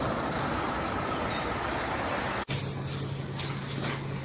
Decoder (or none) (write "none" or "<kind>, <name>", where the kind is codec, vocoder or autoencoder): none